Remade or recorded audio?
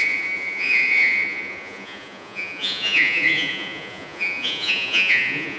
remade